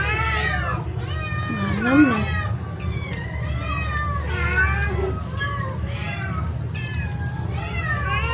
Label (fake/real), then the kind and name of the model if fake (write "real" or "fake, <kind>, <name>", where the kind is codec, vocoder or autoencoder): real